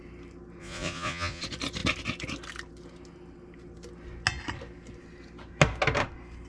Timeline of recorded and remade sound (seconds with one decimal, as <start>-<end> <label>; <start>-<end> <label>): 0.0-0.6 recorded; 0.6-1.4 remade; 1.4-6.5 recorded